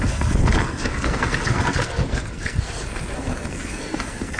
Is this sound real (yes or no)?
no